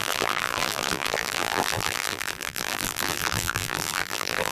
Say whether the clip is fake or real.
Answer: fake